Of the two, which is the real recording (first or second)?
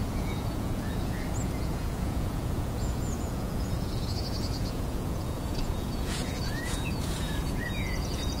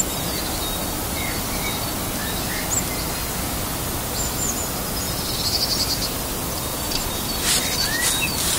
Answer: second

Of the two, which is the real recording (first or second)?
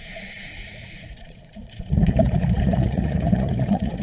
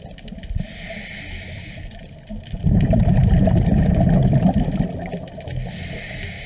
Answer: second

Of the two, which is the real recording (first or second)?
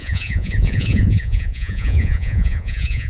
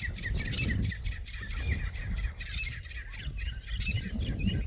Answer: second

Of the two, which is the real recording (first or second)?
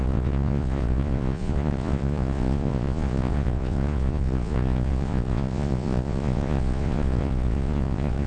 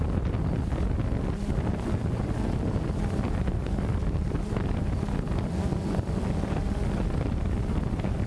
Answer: second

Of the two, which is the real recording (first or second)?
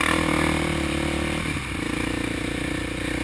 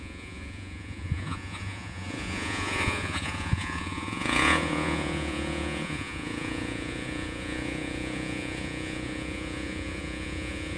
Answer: first